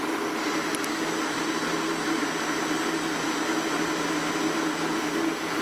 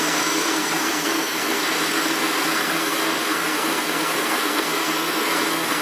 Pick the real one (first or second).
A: first